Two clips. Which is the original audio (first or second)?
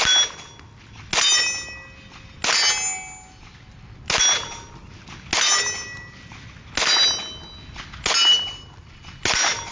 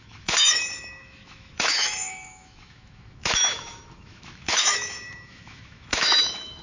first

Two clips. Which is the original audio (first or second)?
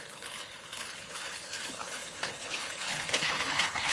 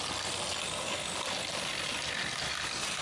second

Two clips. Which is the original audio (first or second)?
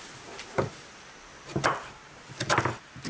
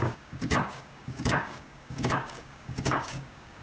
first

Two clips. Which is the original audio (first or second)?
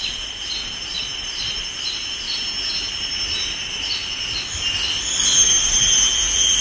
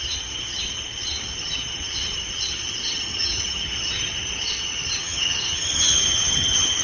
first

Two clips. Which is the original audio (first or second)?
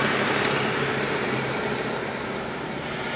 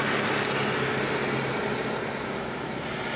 second